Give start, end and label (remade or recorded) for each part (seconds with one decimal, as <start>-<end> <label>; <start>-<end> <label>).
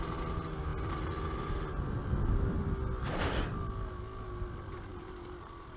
0.0-5.8 recorded